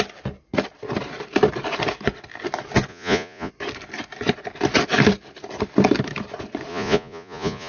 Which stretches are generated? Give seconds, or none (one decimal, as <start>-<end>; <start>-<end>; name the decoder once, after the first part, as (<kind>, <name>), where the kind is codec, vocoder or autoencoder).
2.9-3.5 (vocoder, Vocos); 6.7-7.7